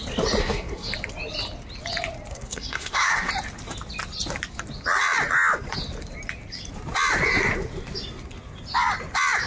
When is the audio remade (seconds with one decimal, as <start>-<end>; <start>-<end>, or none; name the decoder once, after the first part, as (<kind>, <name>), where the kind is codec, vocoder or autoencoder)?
0.4-0.9 (codec, SNAC); 2.3-3.3